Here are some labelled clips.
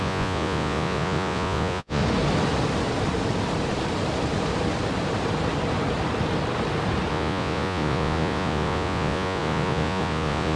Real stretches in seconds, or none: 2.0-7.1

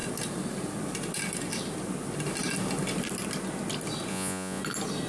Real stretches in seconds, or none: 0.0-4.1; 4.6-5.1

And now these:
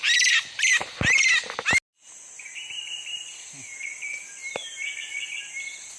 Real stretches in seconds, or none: 0.0-6.0